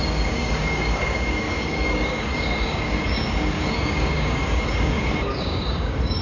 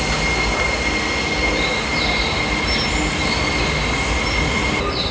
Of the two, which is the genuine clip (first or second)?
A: second